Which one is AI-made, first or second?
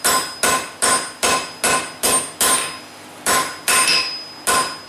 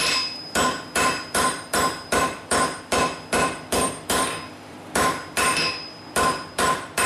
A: second